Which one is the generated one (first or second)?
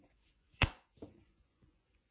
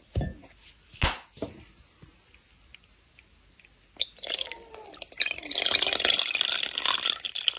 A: first